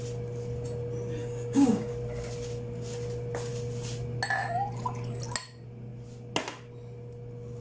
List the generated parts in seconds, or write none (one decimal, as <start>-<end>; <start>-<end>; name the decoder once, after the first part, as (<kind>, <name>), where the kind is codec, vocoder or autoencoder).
1.2-1.9 (codec, DAC)